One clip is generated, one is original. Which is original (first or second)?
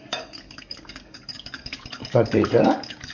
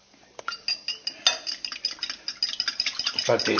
second